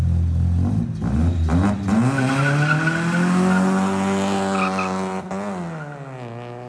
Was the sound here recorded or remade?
recorded